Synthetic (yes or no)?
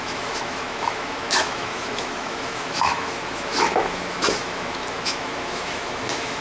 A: yes